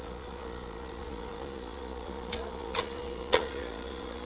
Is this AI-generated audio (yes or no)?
yes